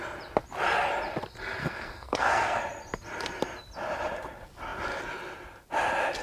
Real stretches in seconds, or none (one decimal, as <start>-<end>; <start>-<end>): 0.0-1.6; 2.6-6.2